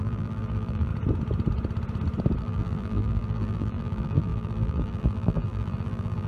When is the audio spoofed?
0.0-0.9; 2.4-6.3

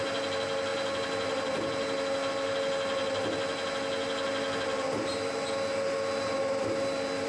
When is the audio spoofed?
none